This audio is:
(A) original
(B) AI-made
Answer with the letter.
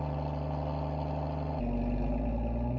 A